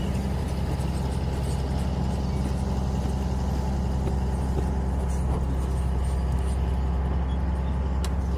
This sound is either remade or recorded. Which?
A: recorded